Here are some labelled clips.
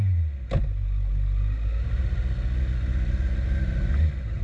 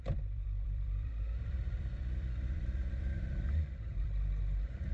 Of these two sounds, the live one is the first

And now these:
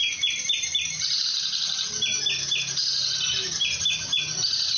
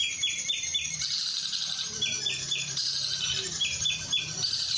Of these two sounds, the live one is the first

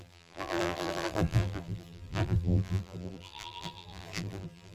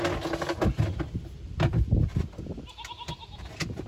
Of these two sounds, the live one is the second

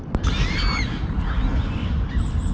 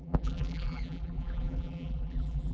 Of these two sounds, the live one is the first